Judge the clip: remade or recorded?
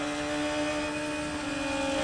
recorded